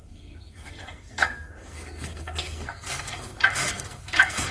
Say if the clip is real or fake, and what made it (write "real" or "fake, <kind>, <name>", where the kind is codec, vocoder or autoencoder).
fake, codec, SNAC